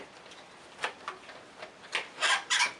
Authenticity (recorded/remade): recorded